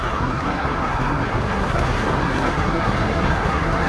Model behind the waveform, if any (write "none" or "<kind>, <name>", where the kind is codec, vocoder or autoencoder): codec, SNAC